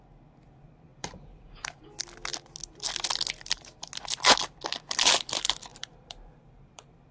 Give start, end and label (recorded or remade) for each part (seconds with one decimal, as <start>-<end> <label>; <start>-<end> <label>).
0.0-0.9 recorded; 0.9-1.8 remade; 1.8-5.7 recorded; 5.7-7.1 remade